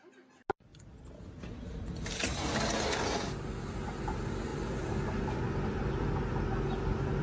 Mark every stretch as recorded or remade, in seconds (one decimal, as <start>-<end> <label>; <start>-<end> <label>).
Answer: 0.0-7.2 recorded